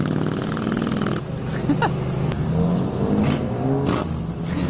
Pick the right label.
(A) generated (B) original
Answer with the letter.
B